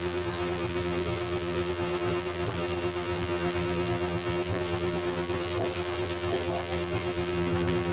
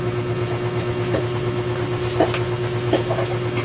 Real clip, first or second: second